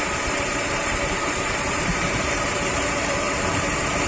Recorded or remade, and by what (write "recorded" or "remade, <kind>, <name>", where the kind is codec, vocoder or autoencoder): remade, vocoder, BigVGAN v2